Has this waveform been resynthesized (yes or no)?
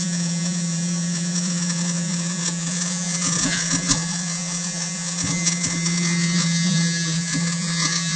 yes